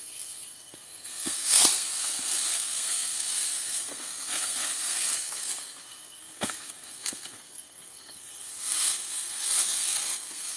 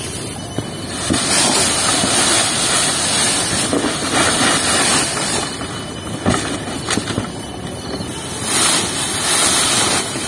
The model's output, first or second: first